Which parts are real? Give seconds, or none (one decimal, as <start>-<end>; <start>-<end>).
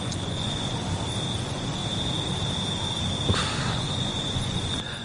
0.8-1.4; 1.8-3.7